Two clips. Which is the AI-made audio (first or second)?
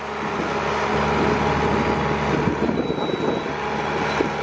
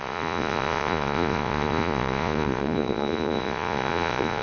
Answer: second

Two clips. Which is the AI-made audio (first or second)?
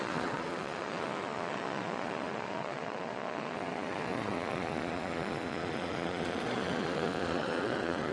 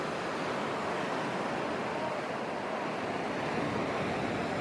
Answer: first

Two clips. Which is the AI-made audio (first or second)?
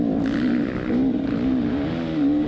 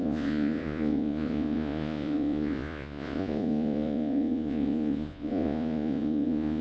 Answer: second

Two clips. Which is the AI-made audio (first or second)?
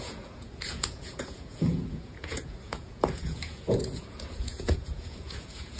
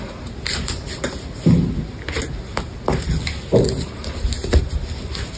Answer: first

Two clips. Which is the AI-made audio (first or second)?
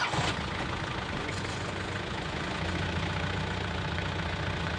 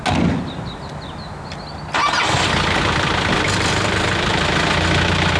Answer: first